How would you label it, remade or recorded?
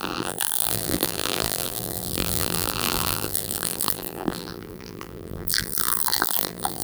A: remade